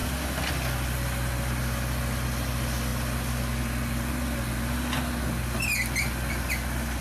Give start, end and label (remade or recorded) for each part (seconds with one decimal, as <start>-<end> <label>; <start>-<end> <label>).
0.0-7.0 recorded